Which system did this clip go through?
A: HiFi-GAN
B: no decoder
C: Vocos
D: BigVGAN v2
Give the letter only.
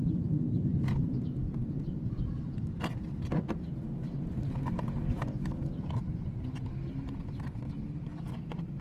B